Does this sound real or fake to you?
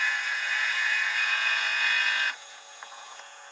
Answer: fake